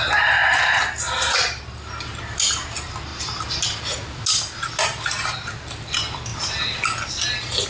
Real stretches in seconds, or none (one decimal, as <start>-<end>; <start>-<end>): 0.0-7.7